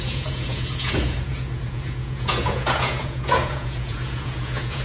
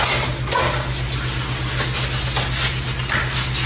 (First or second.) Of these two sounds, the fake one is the first